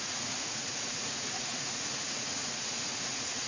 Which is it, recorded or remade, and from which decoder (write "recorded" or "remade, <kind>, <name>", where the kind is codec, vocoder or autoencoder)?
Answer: remade, vocoder, Vocos